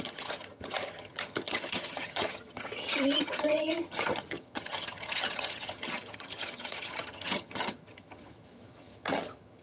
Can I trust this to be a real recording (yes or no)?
no